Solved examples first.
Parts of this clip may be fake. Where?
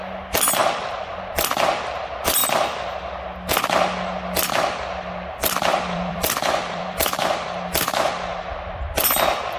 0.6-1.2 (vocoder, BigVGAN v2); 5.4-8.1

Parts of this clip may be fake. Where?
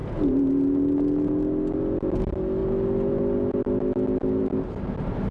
none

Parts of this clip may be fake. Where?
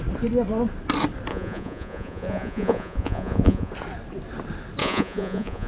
1.3-3.7 (vocoder, Vocos); 4.8-5.7